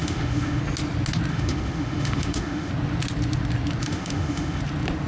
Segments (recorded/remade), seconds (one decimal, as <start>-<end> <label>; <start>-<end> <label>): 0.0-0.6 remade; 0.6-1.3 recorded; 1.3-2.7 remade; 2.7-3.8 recorded; 3.8-4.6 remade; 4.6-5.1 recorded